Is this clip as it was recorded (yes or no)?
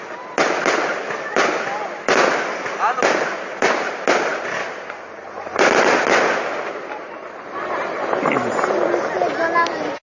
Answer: yes